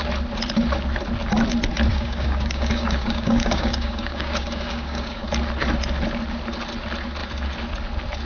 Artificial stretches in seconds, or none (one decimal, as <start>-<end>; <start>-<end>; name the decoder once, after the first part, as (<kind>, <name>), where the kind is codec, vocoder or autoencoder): 1.9-5.2 (codec, DAC)